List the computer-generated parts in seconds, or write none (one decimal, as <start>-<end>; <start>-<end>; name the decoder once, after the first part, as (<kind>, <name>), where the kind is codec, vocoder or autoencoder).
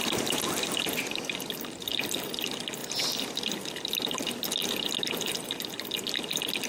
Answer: none